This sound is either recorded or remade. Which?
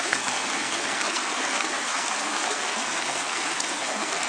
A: remade